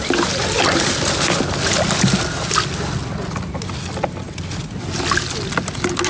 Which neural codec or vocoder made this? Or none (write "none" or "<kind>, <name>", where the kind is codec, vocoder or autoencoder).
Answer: none